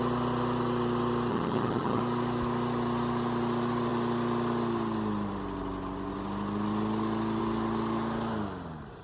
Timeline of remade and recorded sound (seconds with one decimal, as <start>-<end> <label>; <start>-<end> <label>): 0.0-1.3 recorded; 1.3-2.0 remade; 2.0-9.0 recorded